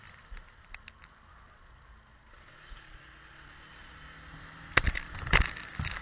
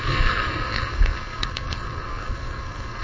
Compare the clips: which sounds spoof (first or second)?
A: second